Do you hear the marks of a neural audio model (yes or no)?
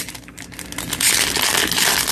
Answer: no